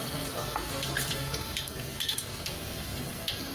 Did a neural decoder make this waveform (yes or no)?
yes